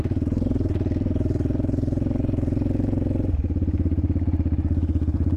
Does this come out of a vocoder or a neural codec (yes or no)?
yes